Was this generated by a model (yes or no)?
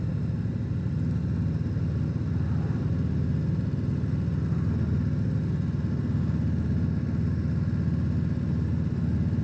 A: no